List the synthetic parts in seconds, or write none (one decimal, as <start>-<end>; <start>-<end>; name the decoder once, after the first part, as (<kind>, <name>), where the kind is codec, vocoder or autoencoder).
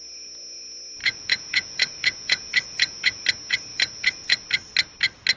1.0-3.2 (vocoder, Vocos); 3.7-4.5